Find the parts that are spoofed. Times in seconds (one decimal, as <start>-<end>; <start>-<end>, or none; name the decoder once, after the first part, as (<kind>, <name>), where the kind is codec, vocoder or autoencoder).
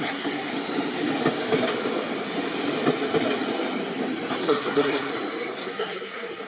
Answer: 0.0-0.5 (codec, SNAC); 4.4-5.1; 5.6-6.5